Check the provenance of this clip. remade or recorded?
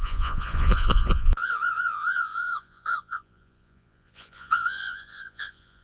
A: remade